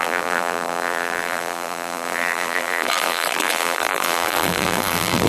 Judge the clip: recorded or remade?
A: remade